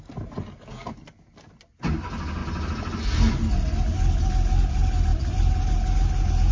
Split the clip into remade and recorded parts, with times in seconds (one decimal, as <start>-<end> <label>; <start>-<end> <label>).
0.0-6.5 recorded